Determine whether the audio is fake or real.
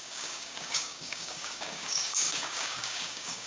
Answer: fake